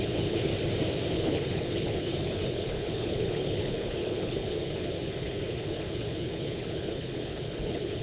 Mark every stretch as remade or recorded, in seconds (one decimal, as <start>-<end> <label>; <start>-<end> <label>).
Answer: 0.0-0.5 remade; 0.5-1.1 recorded; 1.1-8.0 remade